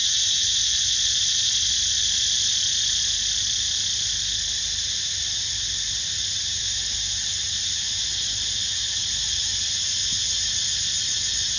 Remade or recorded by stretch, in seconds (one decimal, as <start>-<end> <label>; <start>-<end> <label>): 0.0-11.6 recorded